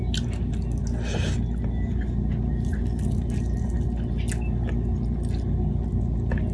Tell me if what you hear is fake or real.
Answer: real